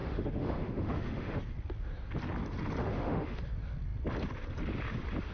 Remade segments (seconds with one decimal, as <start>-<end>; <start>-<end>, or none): 0.0-1.4; 2.8-3.4